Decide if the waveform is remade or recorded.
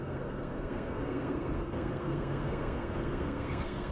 remade